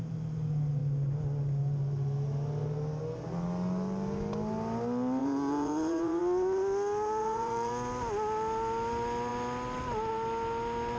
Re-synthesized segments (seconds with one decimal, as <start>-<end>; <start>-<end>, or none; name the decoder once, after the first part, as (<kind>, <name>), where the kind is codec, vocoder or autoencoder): 5.2-6.2 (vocoder, Vocos); 7.2-7.7

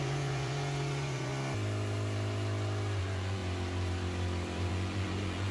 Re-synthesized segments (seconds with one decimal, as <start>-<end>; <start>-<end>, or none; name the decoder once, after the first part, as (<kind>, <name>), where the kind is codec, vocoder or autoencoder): 0.0-1.3 (vocoder, Vocos); 3.0-3.4; 4.7-5.5